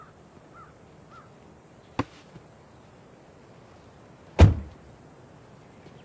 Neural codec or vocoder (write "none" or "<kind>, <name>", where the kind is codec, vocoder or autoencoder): none